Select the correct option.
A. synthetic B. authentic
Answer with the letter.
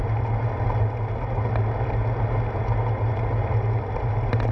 B